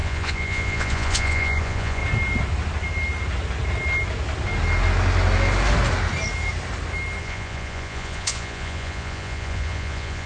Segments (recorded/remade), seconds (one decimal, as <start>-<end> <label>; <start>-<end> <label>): 0.0-2.0 remade; 2.0-7.2 recorded; 7.2-10.3 remade